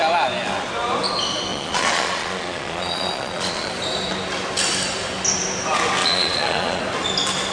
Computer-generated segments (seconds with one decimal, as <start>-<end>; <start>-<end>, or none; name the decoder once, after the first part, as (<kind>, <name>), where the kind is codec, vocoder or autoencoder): 1.5-3.7 (vocoder, Vocos); 6.0-6.8